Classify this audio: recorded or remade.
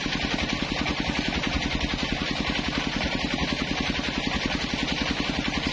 recorded